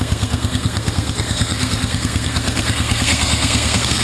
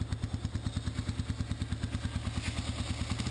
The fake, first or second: first